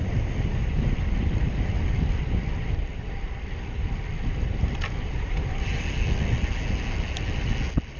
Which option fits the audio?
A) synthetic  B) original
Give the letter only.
B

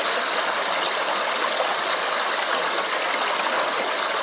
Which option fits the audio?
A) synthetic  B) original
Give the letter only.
B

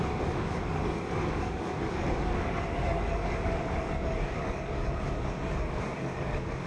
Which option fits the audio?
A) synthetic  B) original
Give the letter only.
A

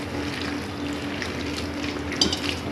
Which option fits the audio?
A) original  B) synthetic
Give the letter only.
A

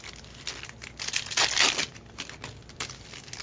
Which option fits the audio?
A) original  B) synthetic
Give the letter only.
A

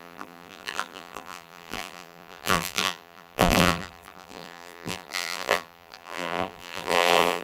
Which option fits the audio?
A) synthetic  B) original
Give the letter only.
A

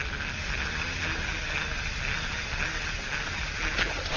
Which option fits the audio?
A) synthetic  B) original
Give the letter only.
B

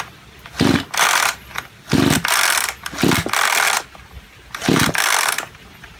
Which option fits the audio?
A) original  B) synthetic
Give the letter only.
A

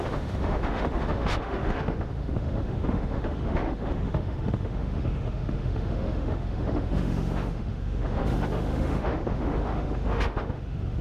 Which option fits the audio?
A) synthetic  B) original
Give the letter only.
A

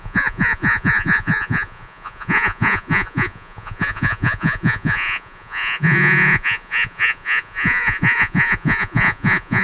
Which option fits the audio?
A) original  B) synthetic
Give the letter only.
B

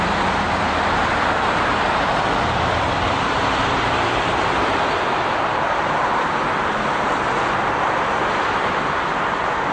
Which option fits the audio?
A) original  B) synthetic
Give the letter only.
A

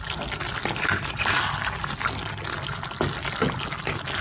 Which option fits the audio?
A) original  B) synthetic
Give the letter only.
A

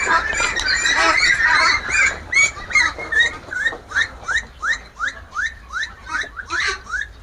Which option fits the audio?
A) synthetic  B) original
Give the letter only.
A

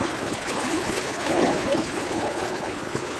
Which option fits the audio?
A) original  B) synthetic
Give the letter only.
B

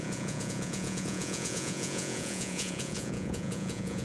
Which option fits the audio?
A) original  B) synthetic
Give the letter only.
B